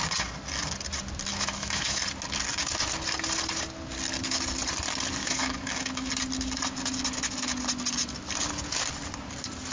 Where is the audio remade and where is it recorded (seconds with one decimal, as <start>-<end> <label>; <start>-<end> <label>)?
0.0-1.3 recorded; 1.3-2.0 remade; 2.0-5.2 recorded; 5.2-6.1 remade; 6.1-9.7 recorded